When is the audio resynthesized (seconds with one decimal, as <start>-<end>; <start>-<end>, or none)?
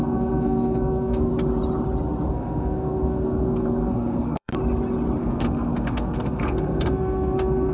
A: 0.0-1.3; 2.3-4.5; 5.2-7.7